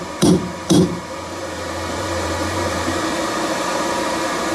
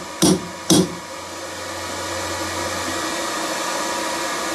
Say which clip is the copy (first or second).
first